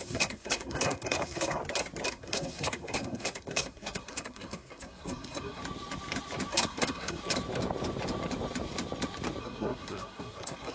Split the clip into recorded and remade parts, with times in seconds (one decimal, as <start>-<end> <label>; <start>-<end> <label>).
0.0-1.6 remade; 1.6-2.1 recorded; 2.1-5.6 remade; 5.6-6.5 recorded; 6.5-7.2 remade; 7.2-9.4 recorded; 9.4-10.7 remade